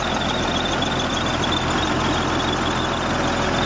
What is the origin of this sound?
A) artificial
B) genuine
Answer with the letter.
B